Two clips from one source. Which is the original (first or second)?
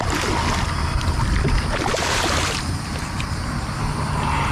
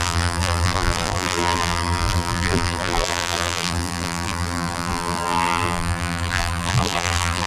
first